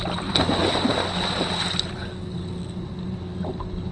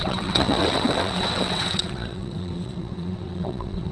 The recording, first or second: first